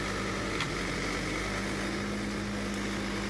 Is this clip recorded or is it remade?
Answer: recorded